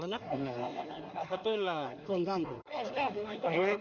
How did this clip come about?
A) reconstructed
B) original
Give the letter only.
A